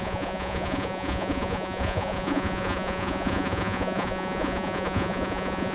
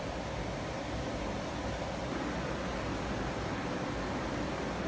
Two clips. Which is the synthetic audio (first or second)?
first